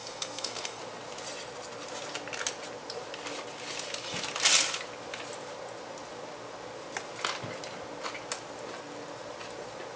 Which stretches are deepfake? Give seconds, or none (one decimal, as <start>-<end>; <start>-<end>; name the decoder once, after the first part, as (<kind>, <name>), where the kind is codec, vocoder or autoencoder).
0.0-0.8 (codec, SNAC)